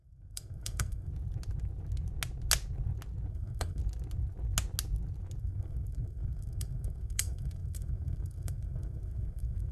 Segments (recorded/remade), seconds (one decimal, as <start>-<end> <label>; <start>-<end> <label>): 0.0-1.1 remade; 1.1-3.3 recorded; 3.3-3.8 remade; 3.8-5.4 recorded; 5.4-9.7 remade